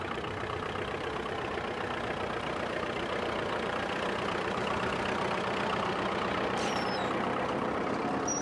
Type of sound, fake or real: fake